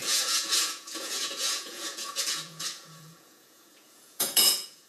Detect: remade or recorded remade